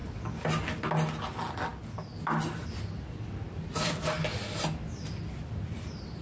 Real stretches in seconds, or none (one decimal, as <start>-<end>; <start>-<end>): 0.0-6.2